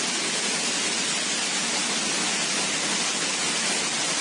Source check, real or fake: real